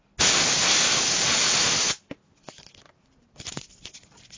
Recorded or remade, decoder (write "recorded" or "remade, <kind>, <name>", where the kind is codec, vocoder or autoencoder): recorded